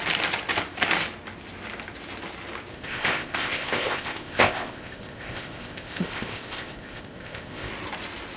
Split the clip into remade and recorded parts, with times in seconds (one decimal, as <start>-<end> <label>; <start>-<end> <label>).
0.0-2.7 recorded; 2.7-7.7 remade; 7.7-8.4 recorded